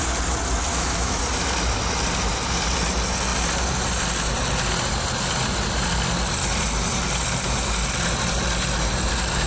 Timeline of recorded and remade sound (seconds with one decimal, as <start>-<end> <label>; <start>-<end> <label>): 0.0-0.7 recorded; 0.7-1.2 remade; 1.2-9.5 recorded